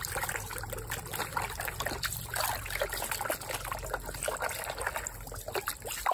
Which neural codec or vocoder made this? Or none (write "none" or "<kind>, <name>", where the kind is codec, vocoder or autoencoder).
none